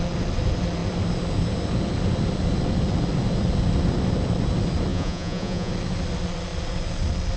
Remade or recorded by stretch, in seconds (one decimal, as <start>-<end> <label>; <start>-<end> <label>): 0.0-4.9 recorded; 4.9-5.7 remade; 5.7-7.4 recorded